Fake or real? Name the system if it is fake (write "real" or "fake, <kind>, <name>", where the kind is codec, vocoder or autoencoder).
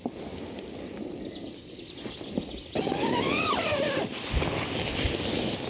real